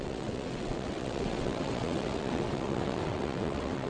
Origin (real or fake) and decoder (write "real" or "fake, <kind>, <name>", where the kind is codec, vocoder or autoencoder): fake, vocoder, WaveNeXt